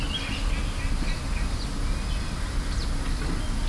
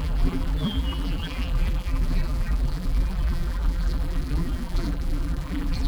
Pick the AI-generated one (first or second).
second